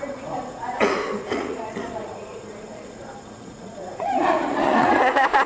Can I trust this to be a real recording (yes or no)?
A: no